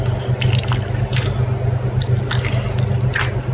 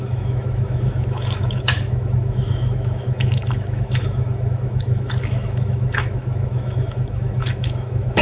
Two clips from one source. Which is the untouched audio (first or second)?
first